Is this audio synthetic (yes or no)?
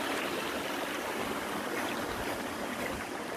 no